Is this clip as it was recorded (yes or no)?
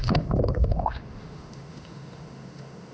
no